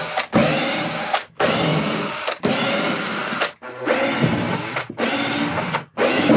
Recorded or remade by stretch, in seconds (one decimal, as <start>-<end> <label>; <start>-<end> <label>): 0.0-0.4 recorded; 0.4-0.9 remade; 0.9-1.7 recorded; 1.7-3.2 remade; 3.2-6.4 recorded